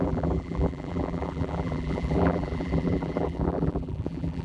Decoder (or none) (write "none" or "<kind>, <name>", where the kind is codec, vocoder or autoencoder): vocoder, BigVGAN v2